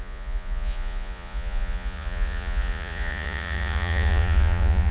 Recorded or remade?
remade